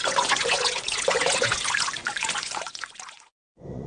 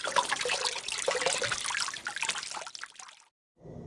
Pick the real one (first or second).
second